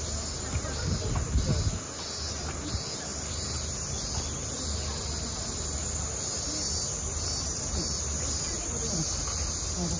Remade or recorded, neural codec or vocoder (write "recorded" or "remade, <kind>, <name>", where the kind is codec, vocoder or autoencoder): recorded